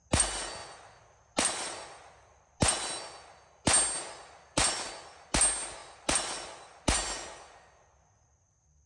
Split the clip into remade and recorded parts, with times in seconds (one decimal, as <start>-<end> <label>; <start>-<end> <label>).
0.0-8.9 recorded